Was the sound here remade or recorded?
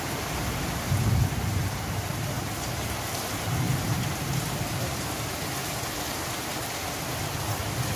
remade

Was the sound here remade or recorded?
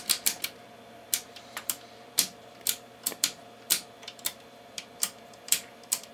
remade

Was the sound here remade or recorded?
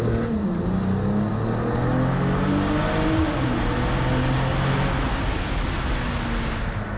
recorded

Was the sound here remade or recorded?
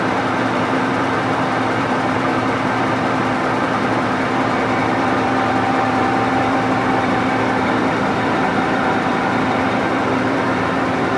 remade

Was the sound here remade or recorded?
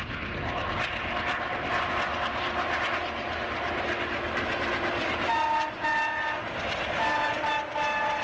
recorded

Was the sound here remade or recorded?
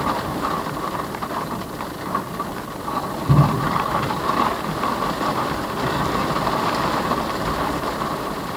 remade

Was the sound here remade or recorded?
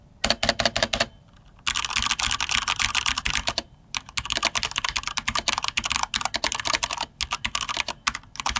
recorded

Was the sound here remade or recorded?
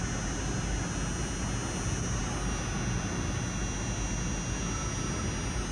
recorded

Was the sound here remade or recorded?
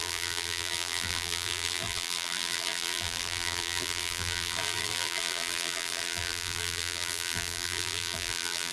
remade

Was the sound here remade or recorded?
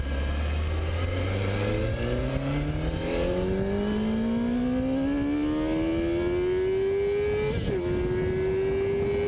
recorded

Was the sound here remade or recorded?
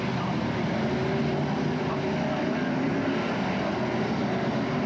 recorded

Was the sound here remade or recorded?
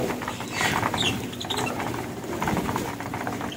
remade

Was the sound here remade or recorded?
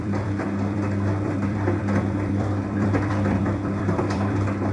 remade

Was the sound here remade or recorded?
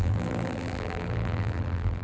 remade